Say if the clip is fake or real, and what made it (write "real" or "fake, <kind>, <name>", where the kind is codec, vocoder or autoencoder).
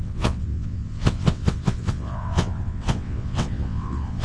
fake, vocoder, WaveNeXt